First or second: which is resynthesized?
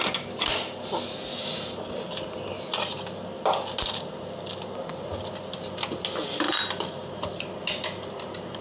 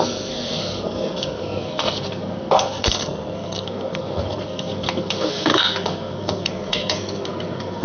second